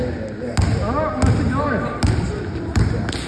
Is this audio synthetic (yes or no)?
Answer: no